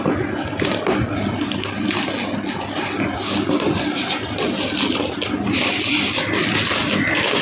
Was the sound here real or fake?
real